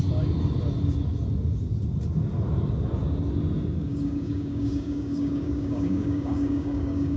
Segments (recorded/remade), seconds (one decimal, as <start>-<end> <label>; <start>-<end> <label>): 0.0-3.8 recorded; 3.8-7.2 remade